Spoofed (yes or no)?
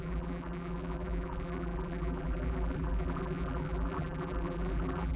yes